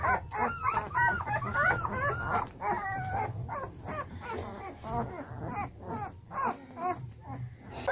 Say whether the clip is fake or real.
real